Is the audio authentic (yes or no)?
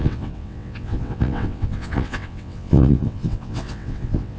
no